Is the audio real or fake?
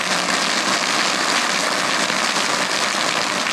real